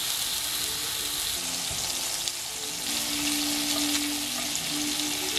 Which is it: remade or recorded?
recorded